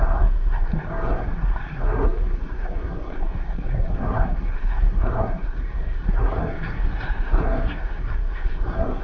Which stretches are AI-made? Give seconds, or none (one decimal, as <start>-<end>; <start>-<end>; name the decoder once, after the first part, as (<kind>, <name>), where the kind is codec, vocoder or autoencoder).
0.0-9.0 (codec, SNAC)